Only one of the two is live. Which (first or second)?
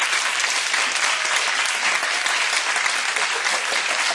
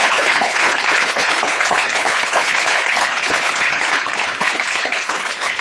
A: first